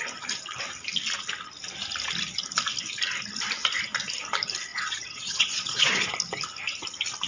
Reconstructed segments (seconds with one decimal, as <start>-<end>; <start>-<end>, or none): 4.7-6.1